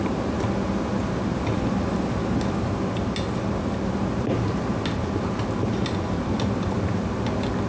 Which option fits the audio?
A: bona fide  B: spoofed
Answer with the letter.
A